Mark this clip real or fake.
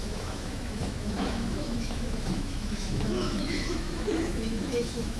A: fake